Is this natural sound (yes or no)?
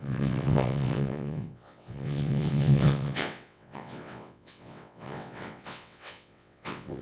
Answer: no